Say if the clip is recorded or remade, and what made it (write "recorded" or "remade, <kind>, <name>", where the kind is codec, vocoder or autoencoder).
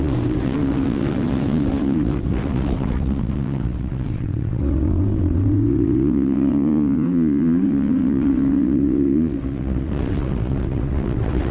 remade, vocoder, WaveNeXt